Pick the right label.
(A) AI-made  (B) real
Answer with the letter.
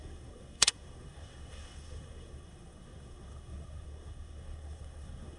A